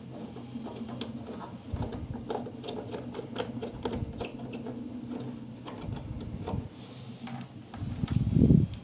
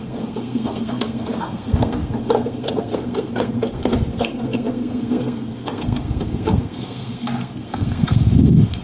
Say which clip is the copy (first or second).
second